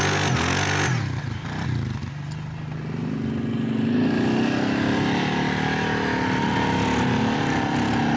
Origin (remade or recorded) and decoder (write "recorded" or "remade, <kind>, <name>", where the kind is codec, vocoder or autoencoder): recorded